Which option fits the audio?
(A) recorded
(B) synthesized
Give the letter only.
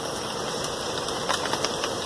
A